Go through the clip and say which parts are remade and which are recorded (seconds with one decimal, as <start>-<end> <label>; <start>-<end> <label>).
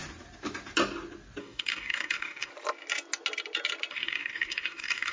0.0-1.4 recorded; 1.4-2.5 remade; 2.5-3.9 recorded; 3.9-5.1 remade